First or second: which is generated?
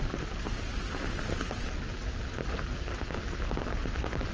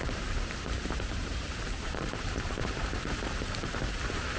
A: second